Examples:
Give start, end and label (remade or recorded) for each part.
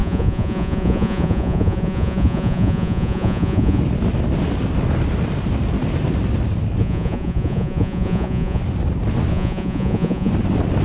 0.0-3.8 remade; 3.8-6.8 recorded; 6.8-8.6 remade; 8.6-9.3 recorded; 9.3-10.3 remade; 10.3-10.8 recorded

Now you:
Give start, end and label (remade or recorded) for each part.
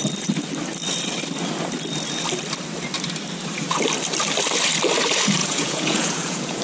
0.0-5.4 recorded; 5.4-6.6 remade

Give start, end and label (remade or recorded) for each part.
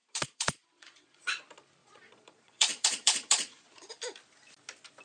0.0-1.4 remade; 1.4-1.8 recorded; 1.8-3.9 remade; 3.9-5.0 recorded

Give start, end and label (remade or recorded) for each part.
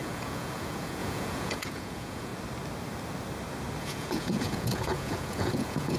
0.0-2.3 remade; 2.3-3.8 recorded; 3.8-6.0 remade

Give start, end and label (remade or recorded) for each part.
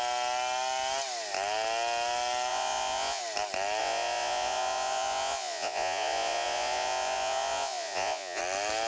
0.0-2.5 recorded; 2.5-3.2 remade; 3.2-3.8 recorded; 3.8-8.4 remade; 8.4-8.9 recorded